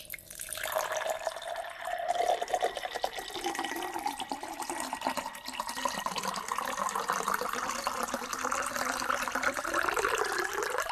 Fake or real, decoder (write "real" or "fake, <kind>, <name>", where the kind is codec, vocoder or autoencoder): real